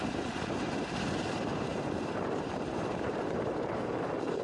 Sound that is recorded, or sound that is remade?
remade